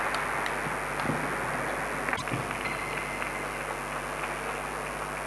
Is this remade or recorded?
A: recorded